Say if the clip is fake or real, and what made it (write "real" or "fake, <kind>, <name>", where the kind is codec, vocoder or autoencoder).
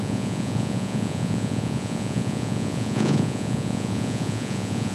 fake, vocoder, Vocos